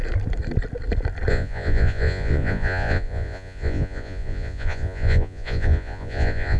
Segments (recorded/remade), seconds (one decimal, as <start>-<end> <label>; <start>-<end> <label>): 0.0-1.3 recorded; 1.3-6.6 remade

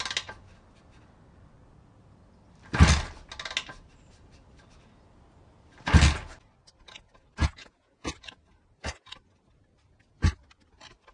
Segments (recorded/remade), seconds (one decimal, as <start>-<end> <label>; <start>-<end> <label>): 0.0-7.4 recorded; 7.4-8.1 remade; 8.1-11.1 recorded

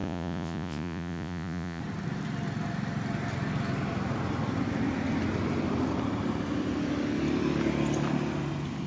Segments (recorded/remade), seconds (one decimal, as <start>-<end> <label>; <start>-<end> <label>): 0.0-1.8 remade; 1.8-8.9 recorded

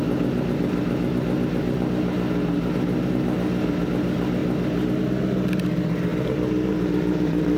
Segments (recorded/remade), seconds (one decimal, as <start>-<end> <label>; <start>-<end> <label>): 0.0-7.6 recorded

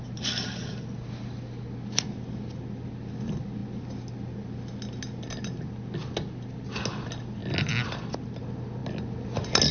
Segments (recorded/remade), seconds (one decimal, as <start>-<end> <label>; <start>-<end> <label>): 0.0-9.7 recorded

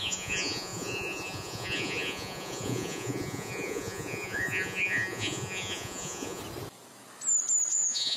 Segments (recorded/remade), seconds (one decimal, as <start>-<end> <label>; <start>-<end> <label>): 0.0-6.4 remade; 6.4-7.7 recorded; 7.7-8.2 remade

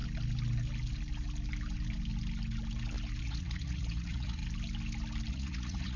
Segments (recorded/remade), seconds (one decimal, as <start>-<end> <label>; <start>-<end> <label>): 0.0-3.2 recorded; 3.2-4.4 remade; 4.4-5.3 recorded; 5.3-6.0 remade

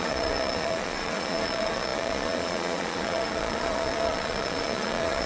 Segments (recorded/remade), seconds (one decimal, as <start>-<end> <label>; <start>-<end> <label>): 0.0-5.3 remade